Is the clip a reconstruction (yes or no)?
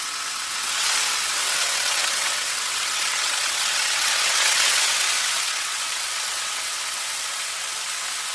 yes